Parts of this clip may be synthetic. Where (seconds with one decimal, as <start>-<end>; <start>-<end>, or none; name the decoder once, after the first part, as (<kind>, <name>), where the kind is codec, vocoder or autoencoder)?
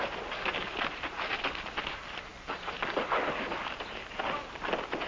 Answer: none